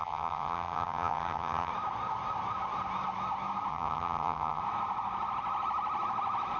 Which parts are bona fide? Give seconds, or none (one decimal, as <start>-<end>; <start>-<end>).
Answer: 1.7-3.7; 4.6-6.6